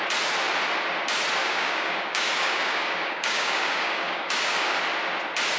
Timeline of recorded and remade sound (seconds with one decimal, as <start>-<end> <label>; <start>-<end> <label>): 0.0-1.4 recorded; 1.4-4.8 remade; 4.8-5.6 recorded